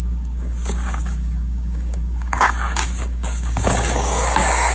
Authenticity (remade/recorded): remade